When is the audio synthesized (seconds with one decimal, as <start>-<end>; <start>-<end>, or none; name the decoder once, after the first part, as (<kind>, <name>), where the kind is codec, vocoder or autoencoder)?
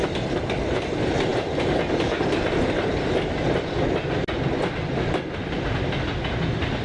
none